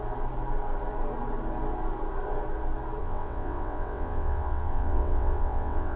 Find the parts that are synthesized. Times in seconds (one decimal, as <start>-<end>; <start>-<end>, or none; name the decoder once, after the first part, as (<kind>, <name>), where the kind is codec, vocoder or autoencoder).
3.0-6.0 (vocoder, WaveNeXt)